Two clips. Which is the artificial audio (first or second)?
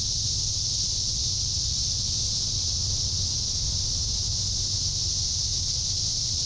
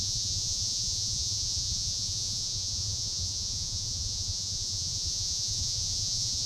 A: second